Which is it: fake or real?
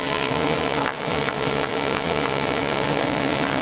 fake